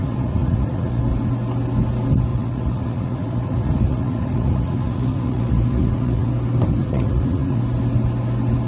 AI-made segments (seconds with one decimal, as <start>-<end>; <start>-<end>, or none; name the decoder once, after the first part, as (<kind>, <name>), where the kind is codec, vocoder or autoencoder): 0.0-1.0 (vocoder, Vocos); 2.3-6.3; 6.8-7.6